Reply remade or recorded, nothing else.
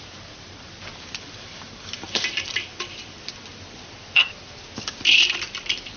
remade